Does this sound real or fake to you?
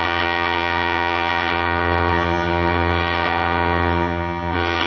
fake